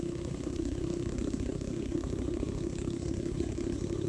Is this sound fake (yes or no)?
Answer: yes